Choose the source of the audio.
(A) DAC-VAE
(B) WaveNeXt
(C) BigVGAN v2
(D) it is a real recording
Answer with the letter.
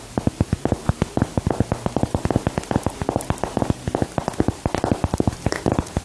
D